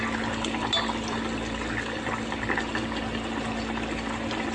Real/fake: real